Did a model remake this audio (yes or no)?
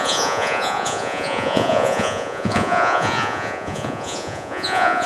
yes